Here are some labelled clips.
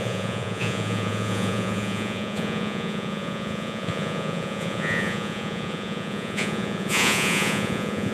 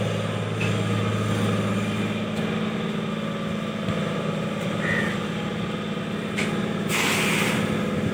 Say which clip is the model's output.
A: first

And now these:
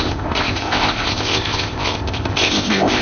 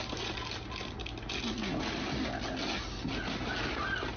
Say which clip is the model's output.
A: first